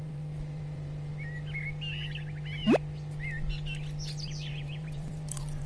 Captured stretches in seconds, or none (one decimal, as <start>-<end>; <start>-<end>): 1.1-4.5